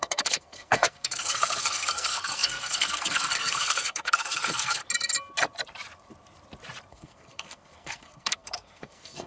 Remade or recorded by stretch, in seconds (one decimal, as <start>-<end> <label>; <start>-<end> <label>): 0.0-4.8 remade; 4.8-6.9 recorded; 6.9-9.3 remade